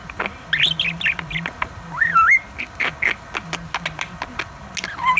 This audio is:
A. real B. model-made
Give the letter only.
A